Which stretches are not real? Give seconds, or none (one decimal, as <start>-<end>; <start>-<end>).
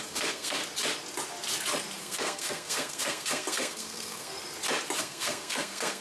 0.0-0.6; 2.0-4.3; 5.0-6.0